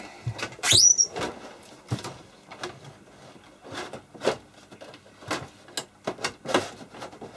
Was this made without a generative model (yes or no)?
yes